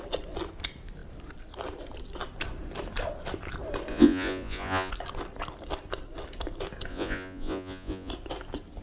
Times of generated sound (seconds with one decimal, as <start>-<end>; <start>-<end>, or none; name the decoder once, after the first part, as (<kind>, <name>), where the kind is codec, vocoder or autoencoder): 3.9-4.9 (vocoder, Vocos); 6.9-8.1